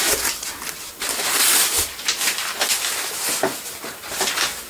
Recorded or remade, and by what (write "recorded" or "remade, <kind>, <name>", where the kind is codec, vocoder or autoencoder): recorded